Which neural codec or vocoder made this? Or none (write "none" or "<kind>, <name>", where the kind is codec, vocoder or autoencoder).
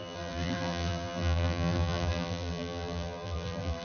vocoder, BigVGAN v2